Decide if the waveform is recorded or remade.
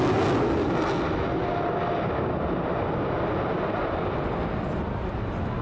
recorded